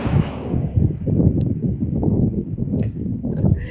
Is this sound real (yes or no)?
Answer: no